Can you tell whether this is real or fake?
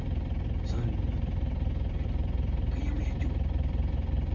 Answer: fake